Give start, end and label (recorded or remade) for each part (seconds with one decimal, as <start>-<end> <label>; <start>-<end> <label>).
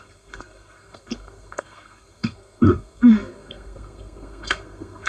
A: 0.0-5.1 remade